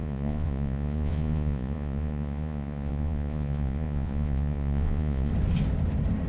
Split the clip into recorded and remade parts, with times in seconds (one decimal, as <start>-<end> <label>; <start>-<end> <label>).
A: 0.0-5.3 remade; 5.3-6.3 recorded